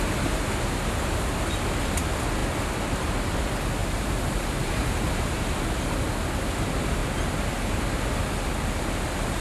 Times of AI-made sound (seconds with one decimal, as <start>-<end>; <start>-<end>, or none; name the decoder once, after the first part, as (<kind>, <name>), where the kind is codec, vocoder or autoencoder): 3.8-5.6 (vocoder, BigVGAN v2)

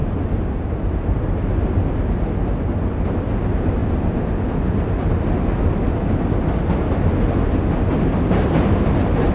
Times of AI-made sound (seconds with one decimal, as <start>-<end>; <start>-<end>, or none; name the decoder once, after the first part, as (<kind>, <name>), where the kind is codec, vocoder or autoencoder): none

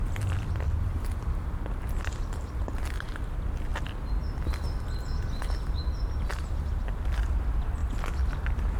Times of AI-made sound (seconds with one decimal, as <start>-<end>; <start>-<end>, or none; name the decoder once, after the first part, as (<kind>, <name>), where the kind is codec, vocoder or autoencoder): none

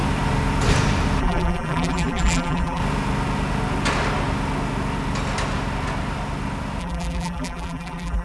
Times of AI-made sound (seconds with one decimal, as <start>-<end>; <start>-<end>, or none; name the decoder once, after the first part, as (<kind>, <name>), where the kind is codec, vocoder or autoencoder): 1.2-2.8 (vocoder, BigVGAN v2); 6.8-8.2

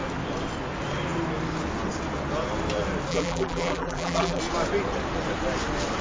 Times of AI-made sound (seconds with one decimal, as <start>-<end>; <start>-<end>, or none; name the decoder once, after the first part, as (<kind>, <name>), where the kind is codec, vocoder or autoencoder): 3.1-4.4 (vocoder, BigVGAN v2)